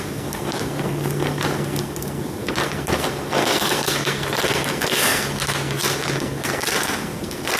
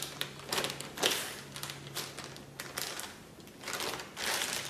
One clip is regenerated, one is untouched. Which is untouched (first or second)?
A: second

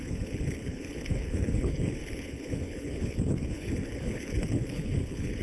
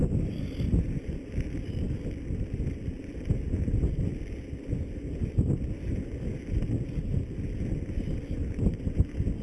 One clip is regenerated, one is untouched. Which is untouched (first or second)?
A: second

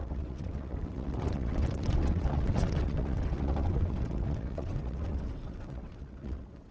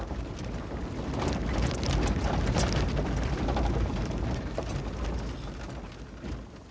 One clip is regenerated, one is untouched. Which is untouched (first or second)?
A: second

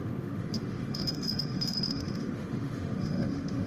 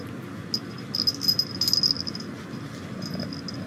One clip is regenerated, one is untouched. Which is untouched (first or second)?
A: second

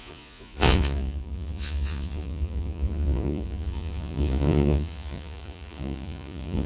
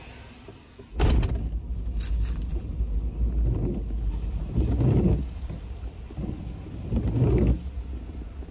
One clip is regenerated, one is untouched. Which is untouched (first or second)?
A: second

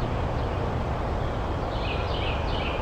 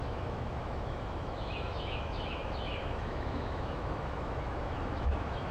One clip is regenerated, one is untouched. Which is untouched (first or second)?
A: first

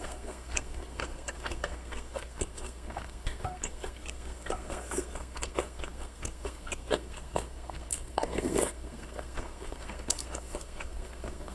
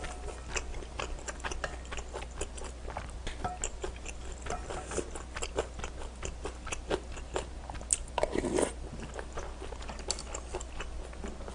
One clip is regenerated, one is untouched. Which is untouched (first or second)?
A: second